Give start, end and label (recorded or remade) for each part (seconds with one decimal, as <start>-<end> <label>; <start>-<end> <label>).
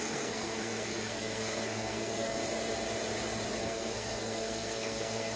0.0-2.4 remade; 2.4-3.6 recorded; 3.6-5.4 remade